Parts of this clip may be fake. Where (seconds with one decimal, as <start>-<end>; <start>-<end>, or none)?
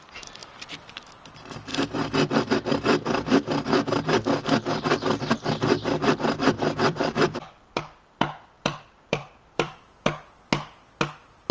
0.4-1.1; 1.7-2.5; 6.0-10.1